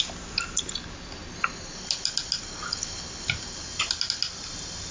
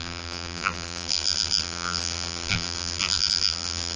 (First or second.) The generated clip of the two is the second